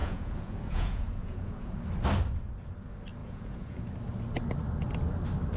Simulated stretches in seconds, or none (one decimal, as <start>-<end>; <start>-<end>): 0.0-1.8; 3.2-3.8